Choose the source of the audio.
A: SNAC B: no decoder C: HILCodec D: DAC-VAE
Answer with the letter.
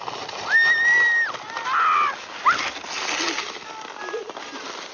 B